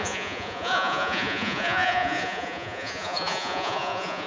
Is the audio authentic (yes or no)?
no